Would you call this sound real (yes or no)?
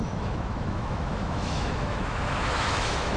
no